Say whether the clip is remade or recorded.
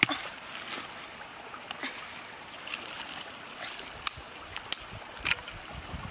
recorded